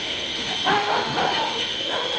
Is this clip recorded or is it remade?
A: remade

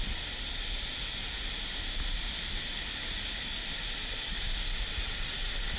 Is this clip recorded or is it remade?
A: recorded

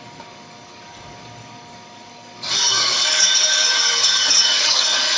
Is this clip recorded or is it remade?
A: remade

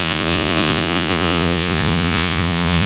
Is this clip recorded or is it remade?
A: remade